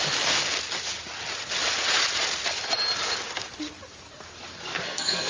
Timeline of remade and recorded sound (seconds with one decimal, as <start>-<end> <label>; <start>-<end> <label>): 0.0-4.7 recorded; 4.7-5.3 remade